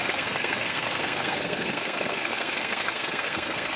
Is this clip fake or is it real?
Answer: fake